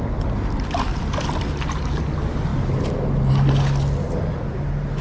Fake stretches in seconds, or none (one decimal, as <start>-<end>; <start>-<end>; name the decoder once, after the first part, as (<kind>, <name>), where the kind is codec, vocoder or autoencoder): 0.9-1.5 (vocoder, BigVGAN v2)